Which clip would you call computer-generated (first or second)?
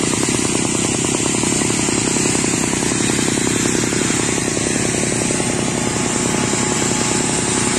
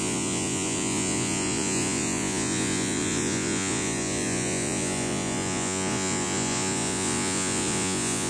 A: second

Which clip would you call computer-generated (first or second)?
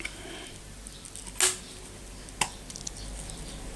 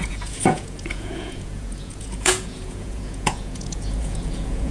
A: second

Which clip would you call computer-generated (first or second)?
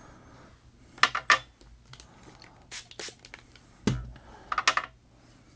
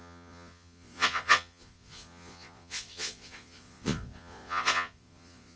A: second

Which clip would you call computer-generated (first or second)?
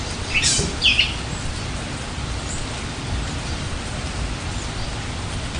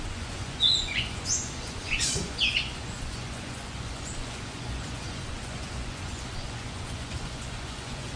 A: second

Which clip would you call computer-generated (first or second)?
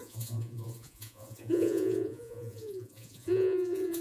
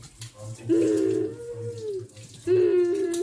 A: first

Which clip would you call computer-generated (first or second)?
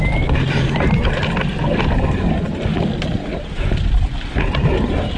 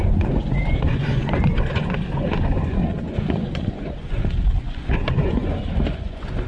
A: second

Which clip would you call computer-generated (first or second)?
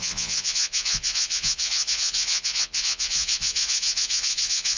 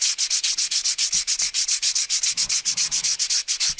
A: first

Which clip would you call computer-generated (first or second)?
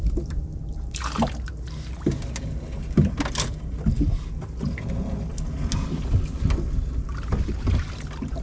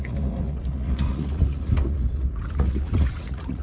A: second